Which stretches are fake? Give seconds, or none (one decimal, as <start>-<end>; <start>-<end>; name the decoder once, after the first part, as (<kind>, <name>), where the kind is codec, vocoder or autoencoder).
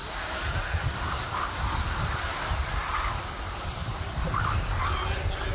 none